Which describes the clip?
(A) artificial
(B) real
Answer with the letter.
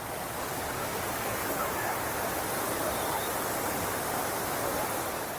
A